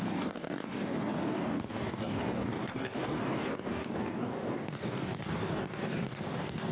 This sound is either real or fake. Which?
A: fake